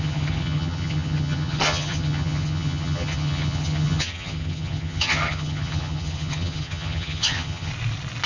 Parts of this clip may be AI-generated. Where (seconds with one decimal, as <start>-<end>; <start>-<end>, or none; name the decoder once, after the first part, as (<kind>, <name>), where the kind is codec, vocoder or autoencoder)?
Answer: 0.0-7.7 (vocoder, HiFi-GAN)